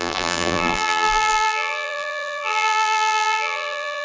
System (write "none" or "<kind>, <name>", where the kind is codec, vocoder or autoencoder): vocoder, BigVGAN v2